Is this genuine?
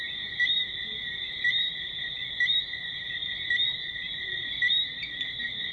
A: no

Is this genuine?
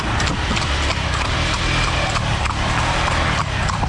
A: no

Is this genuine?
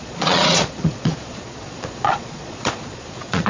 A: no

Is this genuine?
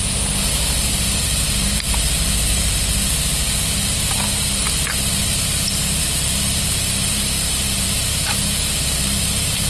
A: no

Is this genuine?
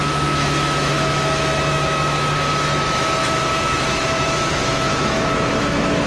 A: no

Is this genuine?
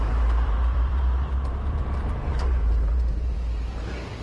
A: no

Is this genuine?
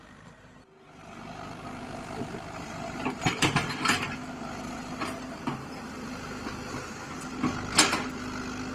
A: yes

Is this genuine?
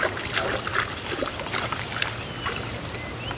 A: yes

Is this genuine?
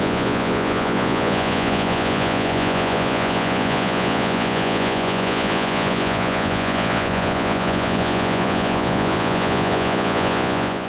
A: no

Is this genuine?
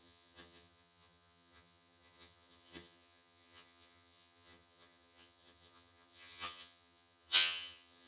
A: no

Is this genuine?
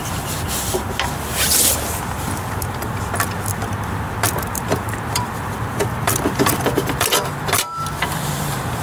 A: no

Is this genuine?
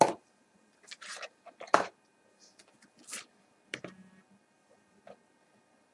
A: no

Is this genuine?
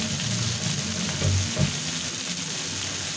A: yes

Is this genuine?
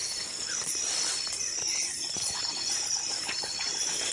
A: yes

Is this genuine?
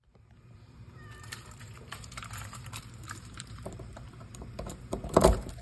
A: no